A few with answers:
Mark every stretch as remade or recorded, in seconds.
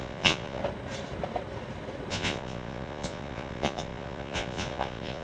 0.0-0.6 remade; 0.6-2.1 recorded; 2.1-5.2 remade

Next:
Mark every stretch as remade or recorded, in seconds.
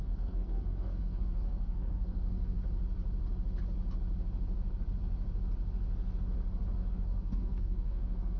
0.0-2.6 remade; 2.6-6.9 recorded; 6.9-8.4 remade